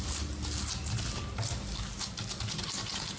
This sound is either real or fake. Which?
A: real